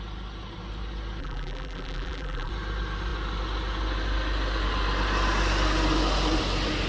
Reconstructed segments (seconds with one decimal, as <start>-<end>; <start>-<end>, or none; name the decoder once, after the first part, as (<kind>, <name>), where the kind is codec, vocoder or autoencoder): 1.2-2.5 (vocoder, BigVGAN v2)